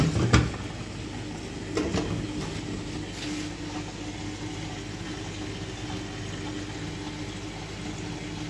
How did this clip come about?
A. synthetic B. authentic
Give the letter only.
B